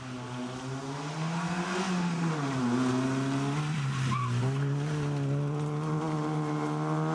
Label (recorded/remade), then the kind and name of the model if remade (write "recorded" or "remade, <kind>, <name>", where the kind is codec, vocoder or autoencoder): recorded